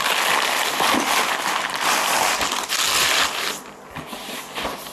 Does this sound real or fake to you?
real